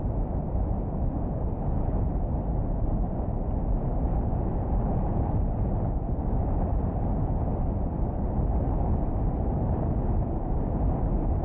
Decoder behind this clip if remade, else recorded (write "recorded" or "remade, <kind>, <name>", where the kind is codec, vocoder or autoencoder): recorded